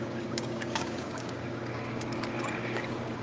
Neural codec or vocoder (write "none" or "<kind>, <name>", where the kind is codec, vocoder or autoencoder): codec, DAC